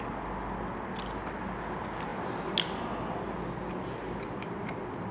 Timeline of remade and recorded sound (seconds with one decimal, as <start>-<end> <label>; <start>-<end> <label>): 0.0-5.1 recorded